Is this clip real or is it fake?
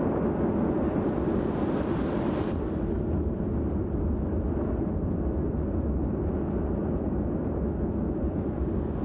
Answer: real